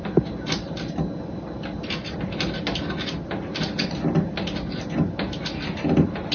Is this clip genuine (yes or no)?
yes